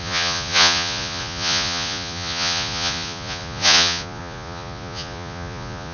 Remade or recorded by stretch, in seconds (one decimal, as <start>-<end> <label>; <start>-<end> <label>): 0.0-5.9 remade